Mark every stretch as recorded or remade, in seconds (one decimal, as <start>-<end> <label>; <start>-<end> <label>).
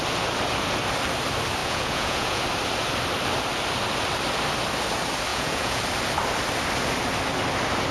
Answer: 0.0-1.6 recorded; 1.6-2.4 remade; 2.4-5.3 recorded; 5.3-5.8 remade; 5.8-7.9 recorded